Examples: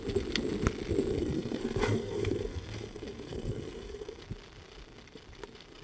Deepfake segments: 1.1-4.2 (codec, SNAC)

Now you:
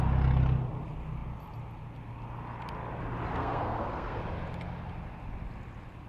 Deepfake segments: 3.4-4.2 (codec, SNAC)

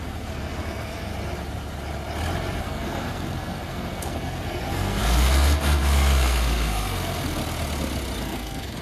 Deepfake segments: 0.0-1.1 (codec, SNAC); 2.6-7.4; 8.2-8.8

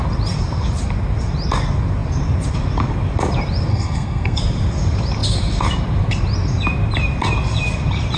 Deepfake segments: 3.7-4.4 (codec, SNAC)

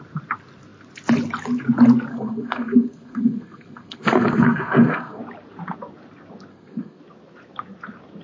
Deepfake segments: 2.1-5.2 (codec, SNAC); 6.5-7.0

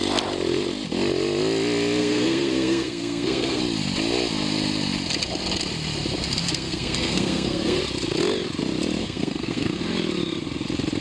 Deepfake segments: 2.0-3.6 (codec, SNAC); 6.4-7.8; 9.0-9.8

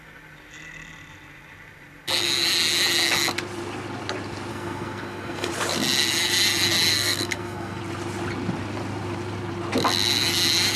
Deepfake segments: 4.5-5.5 (codec, SNAC); 6.9-7.8

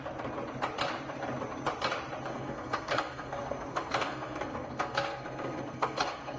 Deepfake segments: 2.3-6.4 (codec, SNAC)